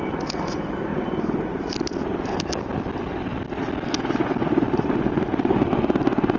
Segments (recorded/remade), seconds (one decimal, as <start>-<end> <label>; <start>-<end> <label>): 0.0-6.4 recorded